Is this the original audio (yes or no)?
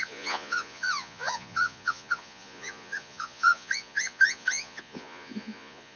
no